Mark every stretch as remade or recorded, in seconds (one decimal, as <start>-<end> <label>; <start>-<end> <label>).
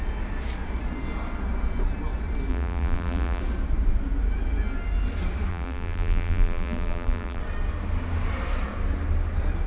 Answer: 0.0-2.5 recorded; 2.5-3.4 remade; 3.4-5.5 recorded; 5.5-7.4 remade; 7.4-9.7 recorded